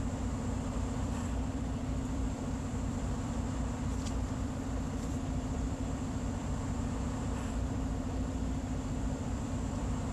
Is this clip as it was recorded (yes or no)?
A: no